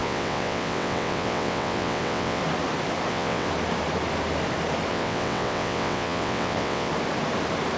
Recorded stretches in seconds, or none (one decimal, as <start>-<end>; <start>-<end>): 2.4-3.1; 3.5-4.9; 6.9-7.8